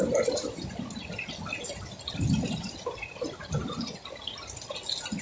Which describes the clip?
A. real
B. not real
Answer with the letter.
A